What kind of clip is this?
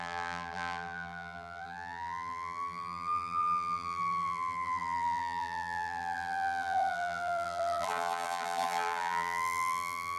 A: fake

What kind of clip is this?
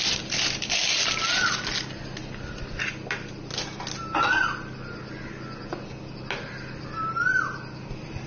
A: real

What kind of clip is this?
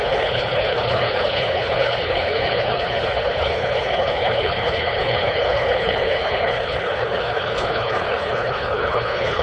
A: fake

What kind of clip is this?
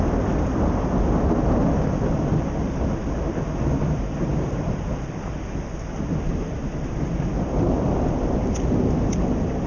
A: real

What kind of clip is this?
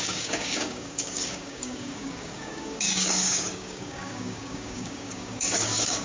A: fake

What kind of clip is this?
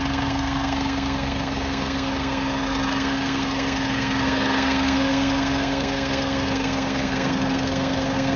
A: fake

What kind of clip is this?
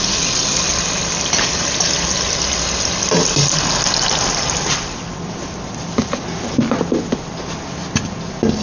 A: real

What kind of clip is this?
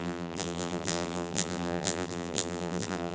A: fake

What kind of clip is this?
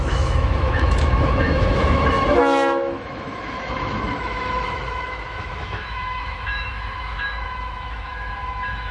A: fake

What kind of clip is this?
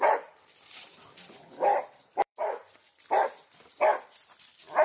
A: fake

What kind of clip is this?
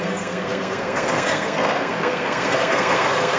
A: fake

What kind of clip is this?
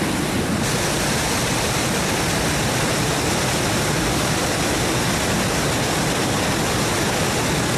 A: real